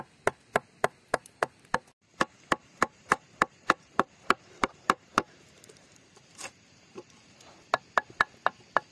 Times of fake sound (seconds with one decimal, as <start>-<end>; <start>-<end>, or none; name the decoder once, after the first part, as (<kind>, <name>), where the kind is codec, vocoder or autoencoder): 2.6-7.5 (vocoder, BigVGAN v2)